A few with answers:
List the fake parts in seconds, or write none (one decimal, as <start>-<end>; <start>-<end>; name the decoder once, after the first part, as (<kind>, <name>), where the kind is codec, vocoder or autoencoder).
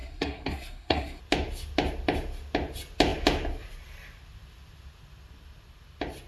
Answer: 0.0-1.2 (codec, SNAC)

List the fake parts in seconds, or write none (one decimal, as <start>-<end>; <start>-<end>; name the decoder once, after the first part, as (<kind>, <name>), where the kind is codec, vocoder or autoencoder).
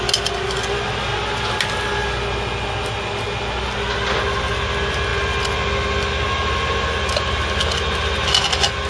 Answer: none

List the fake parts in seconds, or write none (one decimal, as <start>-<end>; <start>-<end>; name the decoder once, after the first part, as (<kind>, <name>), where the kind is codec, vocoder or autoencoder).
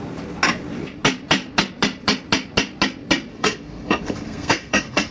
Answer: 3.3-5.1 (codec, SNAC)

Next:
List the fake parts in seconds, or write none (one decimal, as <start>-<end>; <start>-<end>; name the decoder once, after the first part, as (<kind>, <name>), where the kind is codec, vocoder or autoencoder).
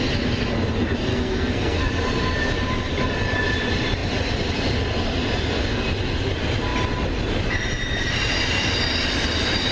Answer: 1.1-1.9 (codec, SNAC)